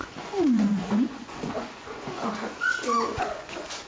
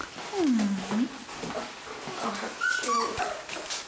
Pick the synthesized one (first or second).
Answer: first